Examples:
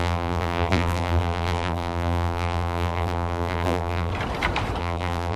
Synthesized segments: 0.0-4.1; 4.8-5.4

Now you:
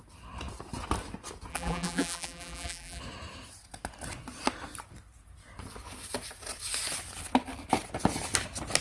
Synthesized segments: 1.5-3.0

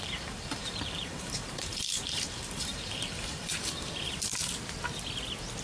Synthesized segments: 0.0-4.3

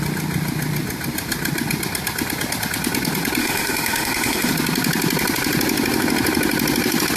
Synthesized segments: 3.4-4.5